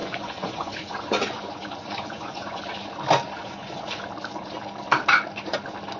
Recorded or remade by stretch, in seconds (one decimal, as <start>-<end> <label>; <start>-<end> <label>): 0.0-2.6 remade; 2.6-3.4 recorded; 3.4-4.0 remade; 4.0-6.0 recorded